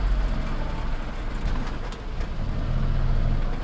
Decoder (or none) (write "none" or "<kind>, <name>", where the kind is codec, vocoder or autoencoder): none